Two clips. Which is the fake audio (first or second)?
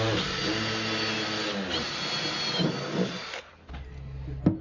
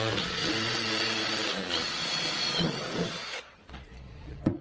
second